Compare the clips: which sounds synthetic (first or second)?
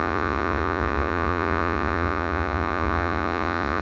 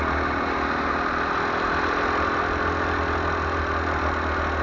first